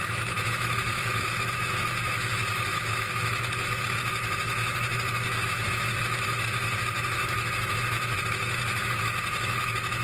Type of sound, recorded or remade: remade